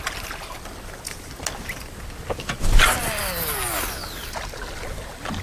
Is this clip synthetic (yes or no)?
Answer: no